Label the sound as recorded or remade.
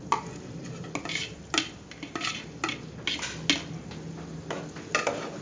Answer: recorded